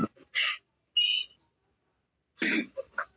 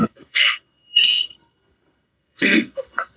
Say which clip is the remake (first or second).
second